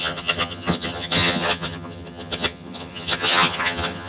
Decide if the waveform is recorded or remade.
remade